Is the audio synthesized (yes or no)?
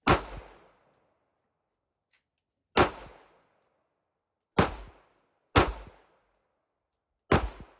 no